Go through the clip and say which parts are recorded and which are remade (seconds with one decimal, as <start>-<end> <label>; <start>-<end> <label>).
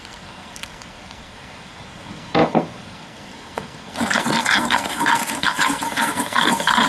0.0-6.9 remade